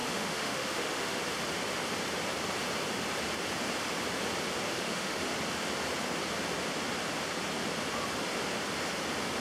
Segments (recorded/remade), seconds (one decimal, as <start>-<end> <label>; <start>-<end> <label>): 0.0-1.2 remade; 1.2-4.7 recorded; 4.7-5.3 remade; 5.3-9.4 recorded